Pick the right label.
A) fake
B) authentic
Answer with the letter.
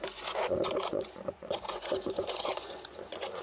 A